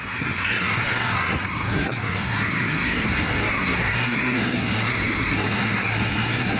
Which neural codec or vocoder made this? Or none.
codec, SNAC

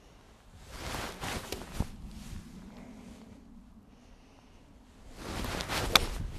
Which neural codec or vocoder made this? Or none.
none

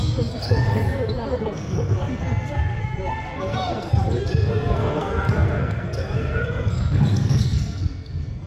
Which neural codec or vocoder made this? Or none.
codec, SNAC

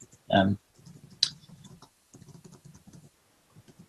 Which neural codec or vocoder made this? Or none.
none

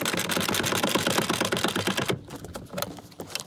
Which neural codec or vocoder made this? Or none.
none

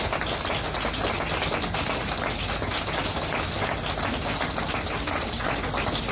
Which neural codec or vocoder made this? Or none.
none